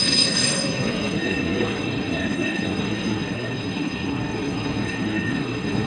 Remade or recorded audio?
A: remade